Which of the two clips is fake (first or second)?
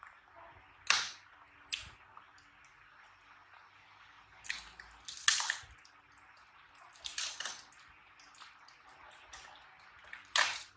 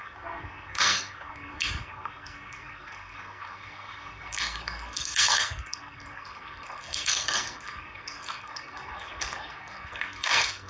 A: second